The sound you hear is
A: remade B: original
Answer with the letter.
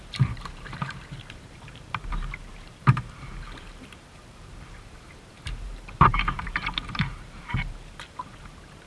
A